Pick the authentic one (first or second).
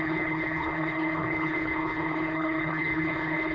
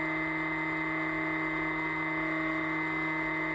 second